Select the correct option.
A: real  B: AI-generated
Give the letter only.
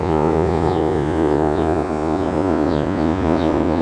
B